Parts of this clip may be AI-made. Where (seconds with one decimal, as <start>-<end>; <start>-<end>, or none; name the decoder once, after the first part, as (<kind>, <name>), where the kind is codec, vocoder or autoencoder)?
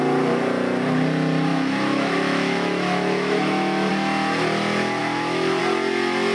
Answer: 1.5-3.9 (autoencoder, DAC-VAE); 5.0-5.6